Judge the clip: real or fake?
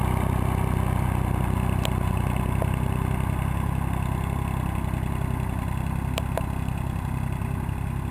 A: real